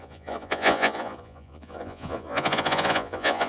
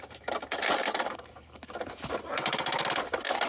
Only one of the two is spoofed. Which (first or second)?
first